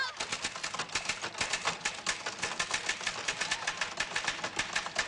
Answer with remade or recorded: recorded